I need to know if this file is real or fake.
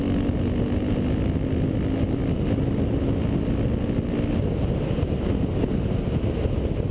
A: real